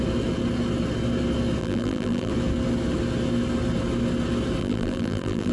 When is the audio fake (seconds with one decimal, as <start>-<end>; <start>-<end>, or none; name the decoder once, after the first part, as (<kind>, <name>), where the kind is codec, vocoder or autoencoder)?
1.6-2.3 (vocoder, BigVGAN v2); 4.6-5.5